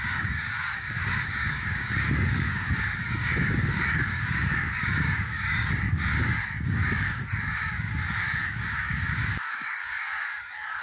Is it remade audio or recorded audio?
remade